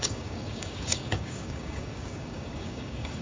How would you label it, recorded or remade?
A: remade